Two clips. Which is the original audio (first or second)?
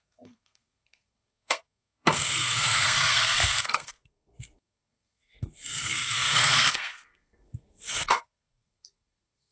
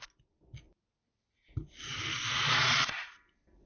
second